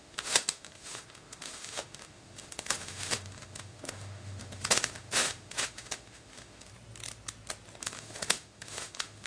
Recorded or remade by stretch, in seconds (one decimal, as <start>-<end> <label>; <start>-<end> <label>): 0.0-6.7 remade; 6.7-7.8 recorded; 7.8-9.3 remade